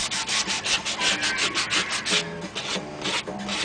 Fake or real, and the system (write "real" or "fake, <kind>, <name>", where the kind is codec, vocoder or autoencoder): real